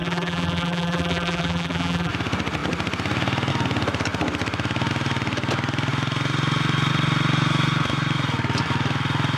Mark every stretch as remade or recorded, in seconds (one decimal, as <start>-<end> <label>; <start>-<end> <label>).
0.0-2.1 remade; 2.1-9.4 recorded